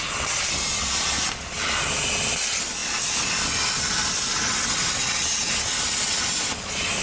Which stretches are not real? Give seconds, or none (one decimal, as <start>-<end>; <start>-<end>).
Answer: none